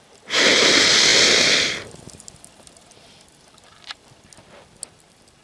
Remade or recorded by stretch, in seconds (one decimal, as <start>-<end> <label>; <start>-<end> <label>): 0.0-1.1 recorded; 1.1-4.3 remade; 4.3-5.4 recorded